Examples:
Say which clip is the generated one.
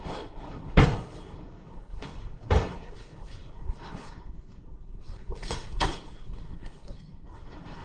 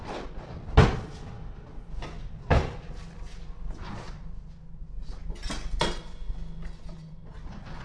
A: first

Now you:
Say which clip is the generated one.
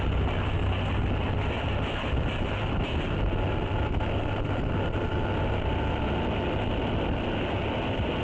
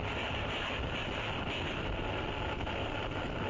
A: second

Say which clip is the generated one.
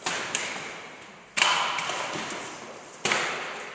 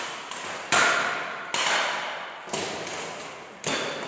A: first